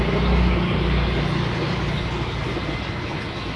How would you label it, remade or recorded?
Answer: recorded